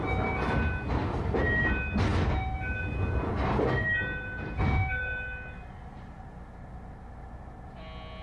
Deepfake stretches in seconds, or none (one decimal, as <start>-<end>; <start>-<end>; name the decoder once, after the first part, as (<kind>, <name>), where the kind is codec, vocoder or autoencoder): none